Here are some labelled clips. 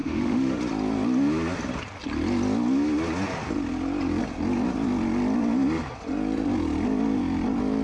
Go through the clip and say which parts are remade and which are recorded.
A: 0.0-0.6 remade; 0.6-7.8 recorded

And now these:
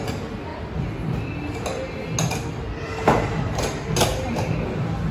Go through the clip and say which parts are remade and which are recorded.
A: 0.0-5.1 recorded

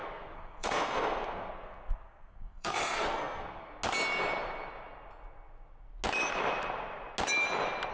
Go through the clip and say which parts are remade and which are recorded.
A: 0.0-3.7 remade; 3.7-7.9 recorded

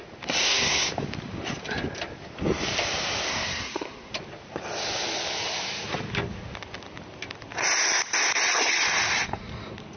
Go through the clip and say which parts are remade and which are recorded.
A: 0.0-0.4 recorded; 0.4-0.9 remade; 0.9-3.3 recorded; 3.3-4.1 remade; 4.1-10.0 recorded